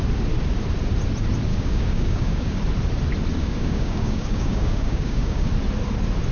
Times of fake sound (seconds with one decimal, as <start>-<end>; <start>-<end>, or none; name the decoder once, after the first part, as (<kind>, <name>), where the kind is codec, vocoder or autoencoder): 1.5-2.6 (codec, DAC); 3.4-5.5